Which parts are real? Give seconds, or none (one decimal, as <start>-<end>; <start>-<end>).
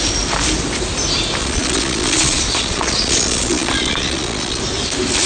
0.0-1.4; 4.6-5.3